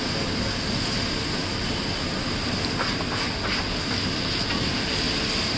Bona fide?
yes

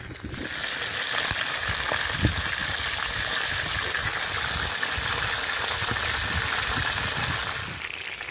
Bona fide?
yes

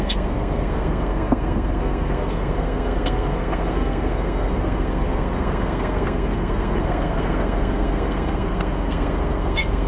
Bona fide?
no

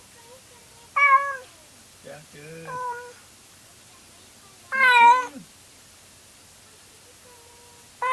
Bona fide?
yes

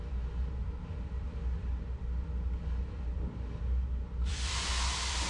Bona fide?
no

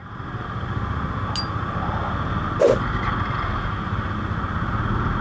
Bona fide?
yes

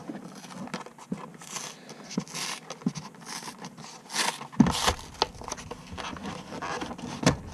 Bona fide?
yes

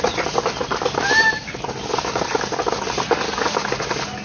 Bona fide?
yes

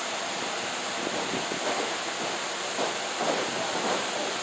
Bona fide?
yes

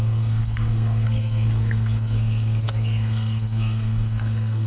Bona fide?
no